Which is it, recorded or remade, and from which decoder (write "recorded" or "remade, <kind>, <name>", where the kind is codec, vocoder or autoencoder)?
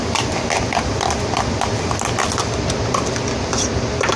recorded